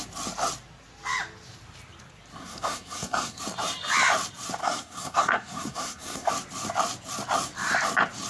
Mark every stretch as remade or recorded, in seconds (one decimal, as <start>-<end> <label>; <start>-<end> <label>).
0.0-2.4 recorded; 2.4-3.4 remade; 3.4-4.6 recorded; 4.6-6.3 remade; 6.3-8.3 recorded